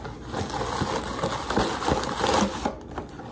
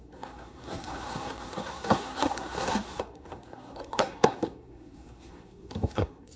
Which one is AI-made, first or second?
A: second